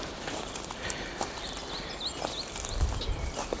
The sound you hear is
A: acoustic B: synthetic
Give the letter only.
B